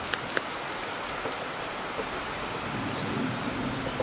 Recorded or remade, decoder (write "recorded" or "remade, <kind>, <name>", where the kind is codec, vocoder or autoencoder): recorded